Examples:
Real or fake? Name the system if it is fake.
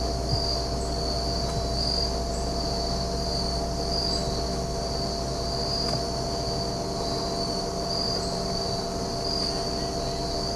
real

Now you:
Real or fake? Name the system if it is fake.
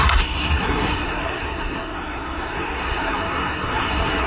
fake, codec, SNAC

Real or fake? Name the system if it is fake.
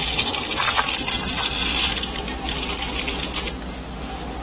real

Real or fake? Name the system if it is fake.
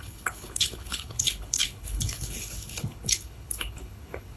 fake, codec, HILCodec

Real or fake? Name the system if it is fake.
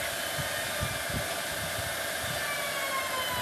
real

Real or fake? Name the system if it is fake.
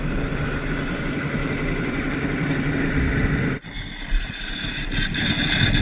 real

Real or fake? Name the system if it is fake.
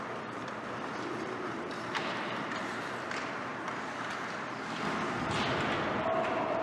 real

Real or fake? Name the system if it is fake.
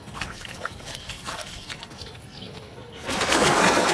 fake, codec, SNAC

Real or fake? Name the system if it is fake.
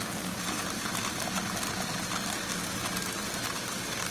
real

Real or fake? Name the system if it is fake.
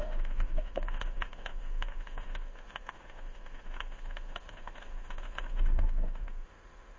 fake, autoencoder, DAC-VAE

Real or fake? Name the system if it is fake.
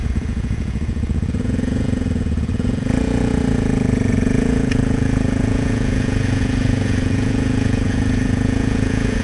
fake, vocoder, Vocos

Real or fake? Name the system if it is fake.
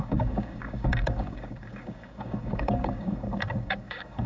fake, codec, DAC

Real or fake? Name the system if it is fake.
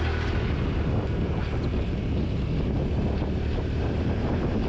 real